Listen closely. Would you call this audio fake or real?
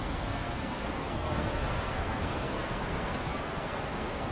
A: fake